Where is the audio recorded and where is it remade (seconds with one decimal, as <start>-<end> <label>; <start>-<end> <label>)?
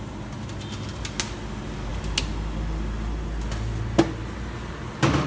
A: 0.0-5.3 recorded